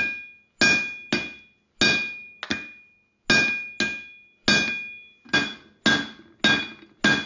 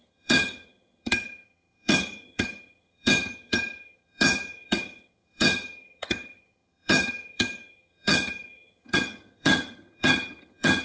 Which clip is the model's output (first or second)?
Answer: second